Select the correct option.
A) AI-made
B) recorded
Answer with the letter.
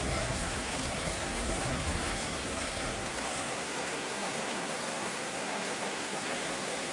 A